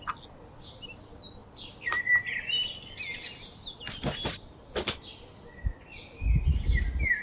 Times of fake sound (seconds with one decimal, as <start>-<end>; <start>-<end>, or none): none